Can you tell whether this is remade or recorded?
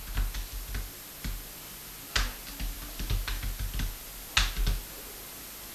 recorded